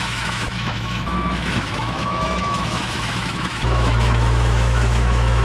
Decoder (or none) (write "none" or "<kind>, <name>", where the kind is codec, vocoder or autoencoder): autoencoder, DAC-VAE